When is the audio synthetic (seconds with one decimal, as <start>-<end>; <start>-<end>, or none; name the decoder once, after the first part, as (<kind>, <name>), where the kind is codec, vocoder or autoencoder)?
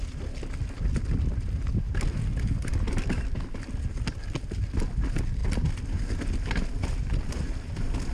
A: none